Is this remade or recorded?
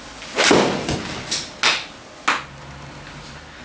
recorded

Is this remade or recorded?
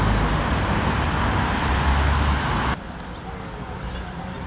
recorded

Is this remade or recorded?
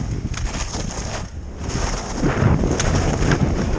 recorded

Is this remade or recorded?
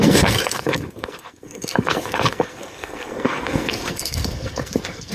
remade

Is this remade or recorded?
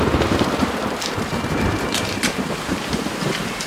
remade